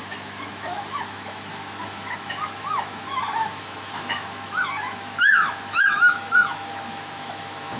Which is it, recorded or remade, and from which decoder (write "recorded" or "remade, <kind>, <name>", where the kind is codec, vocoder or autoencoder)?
remade, autoencoder, DAC-VAE